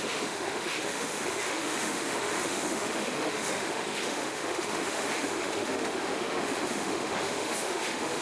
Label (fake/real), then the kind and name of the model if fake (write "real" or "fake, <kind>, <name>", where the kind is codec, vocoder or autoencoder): fake, autoencoder, DAC-VAE